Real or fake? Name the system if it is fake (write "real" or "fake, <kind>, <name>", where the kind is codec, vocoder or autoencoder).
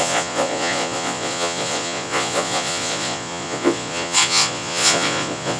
fake, vocoder, Vocos